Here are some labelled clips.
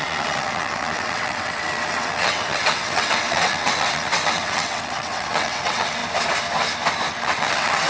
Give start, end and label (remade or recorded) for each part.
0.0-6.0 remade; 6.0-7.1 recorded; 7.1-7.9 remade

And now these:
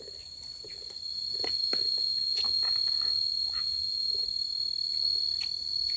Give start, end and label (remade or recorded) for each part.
0.0-0.7 remade; 0.7-4.1 recorded; 4.1-6.0 remade